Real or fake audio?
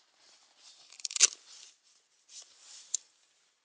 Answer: fake